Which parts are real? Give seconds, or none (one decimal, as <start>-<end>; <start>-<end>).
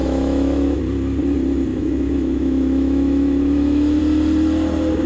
0.8-1.7; 4.0-5.1